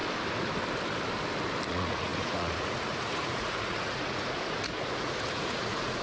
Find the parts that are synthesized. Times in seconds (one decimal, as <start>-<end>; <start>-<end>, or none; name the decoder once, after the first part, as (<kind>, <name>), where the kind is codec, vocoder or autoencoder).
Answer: 1.7-6.0 (vocoder, Vocos)